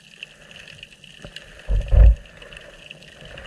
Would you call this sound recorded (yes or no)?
yes